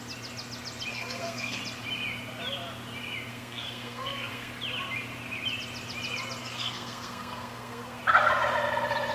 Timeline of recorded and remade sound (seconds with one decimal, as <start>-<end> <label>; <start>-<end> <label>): 0.0-0.9 recorded; 0.9-1.6 remade; 1.6-3.3 recorded; 3.3-4.5 remade; 4.5-6.4 recorded; 6.4-8.0 remade; 8.0-9.1 recorded